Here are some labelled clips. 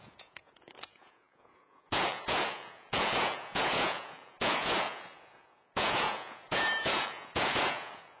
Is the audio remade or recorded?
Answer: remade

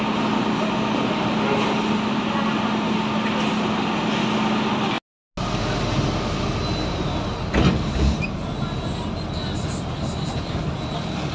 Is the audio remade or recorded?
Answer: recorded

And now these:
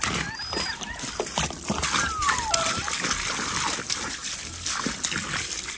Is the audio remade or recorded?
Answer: recorded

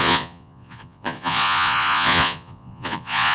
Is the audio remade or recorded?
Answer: remade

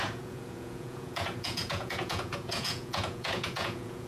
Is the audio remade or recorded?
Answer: remade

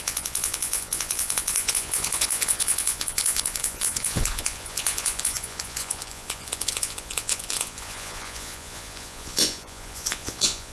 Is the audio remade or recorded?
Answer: remade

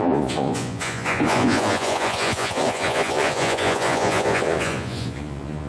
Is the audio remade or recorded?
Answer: remade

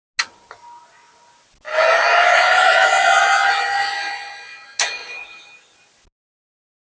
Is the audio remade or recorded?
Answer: recorded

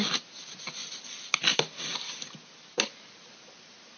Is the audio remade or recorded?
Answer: recorded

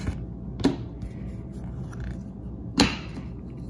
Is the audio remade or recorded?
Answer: recorded